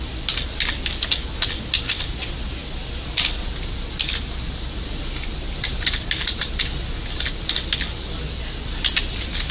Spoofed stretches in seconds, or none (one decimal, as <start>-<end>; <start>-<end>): none